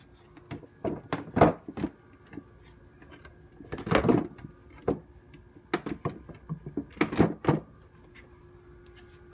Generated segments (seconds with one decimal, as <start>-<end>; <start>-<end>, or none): none